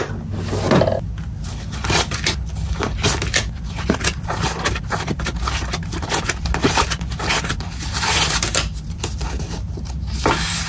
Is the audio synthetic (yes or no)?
no